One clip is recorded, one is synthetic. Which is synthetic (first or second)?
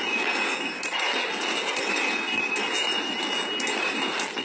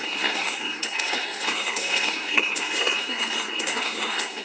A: second